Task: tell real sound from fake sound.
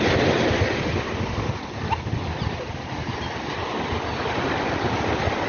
real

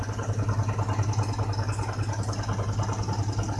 real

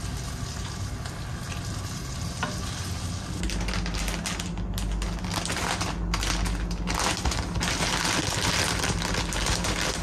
real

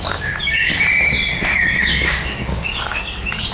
fake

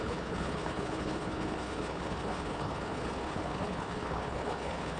fake